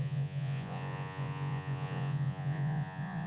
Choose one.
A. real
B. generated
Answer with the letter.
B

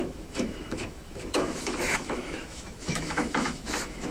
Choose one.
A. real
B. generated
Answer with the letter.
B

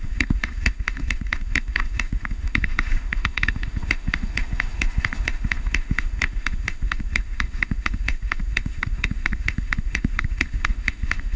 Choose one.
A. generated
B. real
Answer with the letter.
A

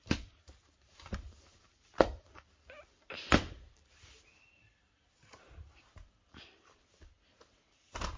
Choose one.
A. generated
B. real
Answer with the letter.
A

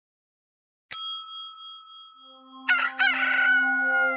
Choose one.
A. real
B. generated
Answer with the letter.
A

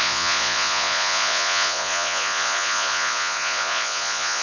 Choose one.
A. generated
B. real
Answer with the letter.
A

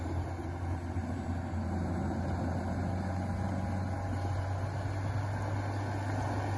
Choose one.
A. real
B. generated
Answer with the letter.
A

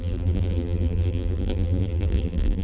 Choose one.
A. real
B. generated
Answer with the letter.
B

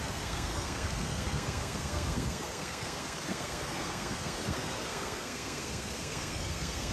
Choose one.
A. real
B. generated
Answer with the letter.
B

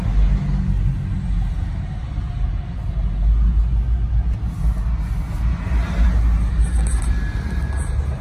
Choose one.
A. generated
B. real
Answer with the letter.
B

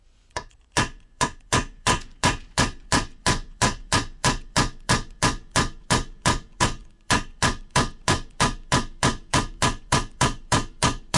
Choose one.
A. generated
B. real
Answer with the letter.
A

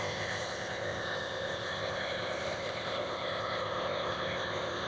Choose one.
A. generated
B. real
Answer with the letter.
A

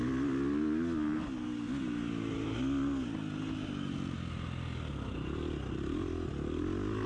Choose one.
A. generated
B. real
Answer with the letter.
B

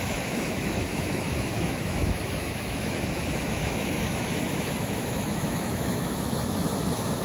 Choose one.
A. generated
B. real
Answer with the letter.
A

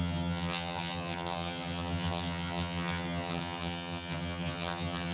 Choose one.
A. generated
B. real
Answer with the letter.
A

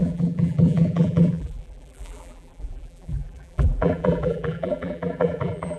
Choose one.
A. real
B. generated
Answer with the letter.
B